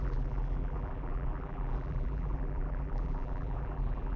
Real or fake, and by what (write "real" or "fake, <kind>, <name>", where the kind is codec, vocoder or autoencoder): fake, vocoder, BigVGAN v2